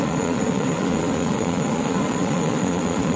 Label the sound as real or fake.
fake